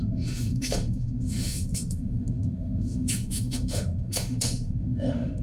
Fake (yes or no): yes